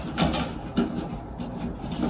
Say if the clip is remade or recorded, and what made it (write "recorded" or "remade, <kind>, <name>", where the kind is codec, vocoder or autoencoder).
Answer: recorded